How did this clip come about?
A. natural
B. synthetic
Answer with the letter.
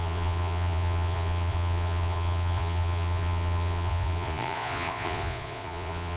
B